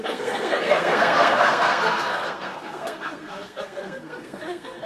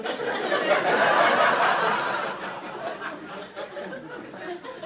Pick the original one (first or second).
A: second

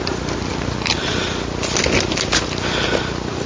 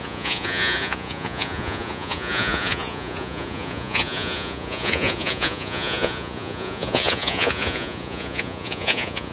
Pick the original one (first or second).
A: first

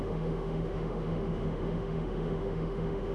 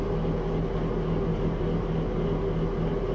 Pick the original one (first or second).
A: second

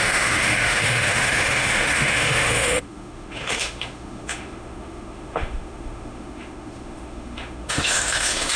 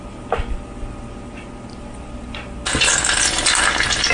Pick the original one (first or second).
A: second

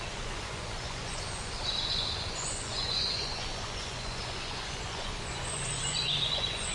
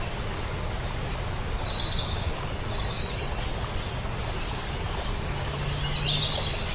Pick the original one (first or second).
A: second